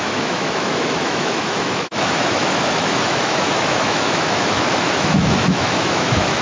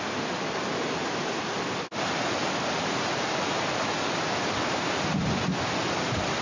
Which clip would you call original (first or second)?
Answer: second